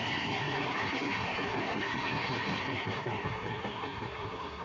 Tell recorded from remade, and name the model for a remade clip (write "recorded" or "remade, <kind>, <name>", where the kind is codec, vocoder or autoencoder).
remade, codec, SNAC